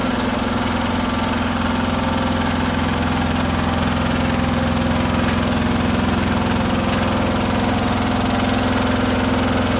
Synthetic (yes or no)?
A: no